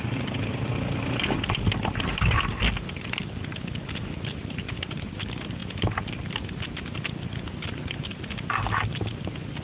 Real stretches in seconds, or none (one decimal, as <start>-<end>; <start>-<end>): 0.0-9.6